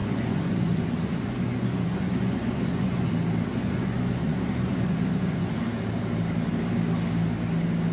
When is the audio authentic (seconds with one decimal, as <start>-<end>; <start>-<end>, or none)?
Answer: 3.1-3.5; 5.5-7.9